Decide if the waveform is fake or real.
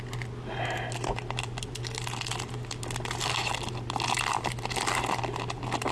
real